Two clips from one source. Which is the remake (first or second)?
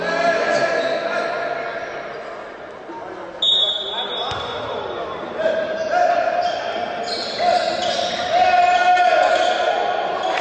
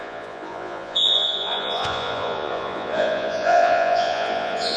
second